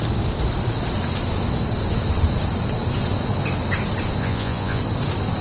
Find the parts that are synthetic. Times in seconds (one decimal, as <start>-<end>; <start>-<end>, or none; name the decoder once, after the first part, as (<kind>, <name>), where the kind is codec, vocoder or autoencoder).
4.2-4.8 (vocoder, Vocos)